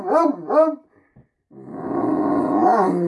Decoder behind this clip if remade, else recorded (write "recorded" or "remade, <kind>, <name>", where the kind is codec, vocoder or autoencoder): recorded